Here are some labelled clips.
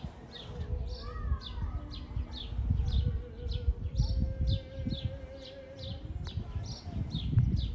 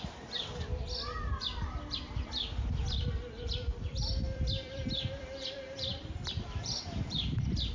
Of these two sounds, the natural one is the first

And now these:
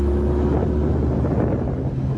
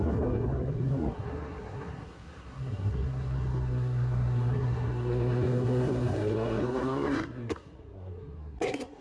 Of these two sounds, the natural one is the first